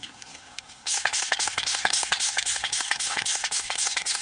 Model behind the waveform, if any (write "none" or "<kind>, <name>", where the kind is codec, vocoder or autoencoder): codec, SNAC